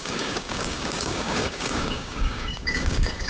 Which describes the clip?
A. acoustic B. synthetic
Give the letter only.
B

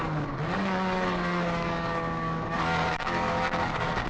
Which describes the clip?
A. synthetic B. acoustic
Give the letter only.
A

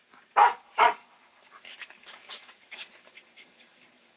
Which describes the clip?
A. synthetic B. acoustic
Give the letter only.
A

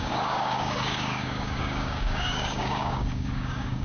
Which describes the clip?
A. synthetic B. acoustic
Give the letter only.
A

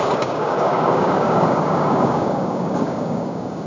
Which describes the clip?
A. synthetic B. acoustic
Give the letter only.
A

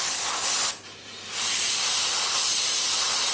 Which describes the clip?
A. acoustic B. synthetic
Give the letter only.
A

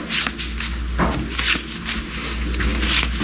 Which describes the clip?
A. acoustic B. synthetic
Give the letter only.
A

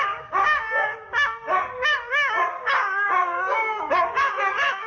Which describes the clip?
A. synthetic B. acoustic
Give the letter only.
A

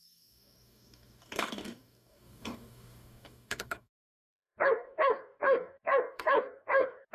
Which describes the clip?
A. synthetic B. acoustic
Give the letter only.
A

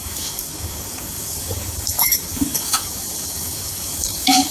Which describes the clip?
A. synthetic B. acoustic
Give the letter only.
A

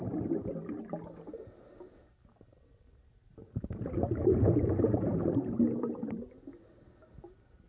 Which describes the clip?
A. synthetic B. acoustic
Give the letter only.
B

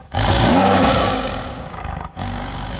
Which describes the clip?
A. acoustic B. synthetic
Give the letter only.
B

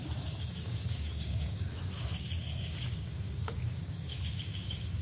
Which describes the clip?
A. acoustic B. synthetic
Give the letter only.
B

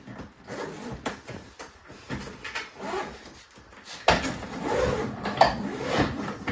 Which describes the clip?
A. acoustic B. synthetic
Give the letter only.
A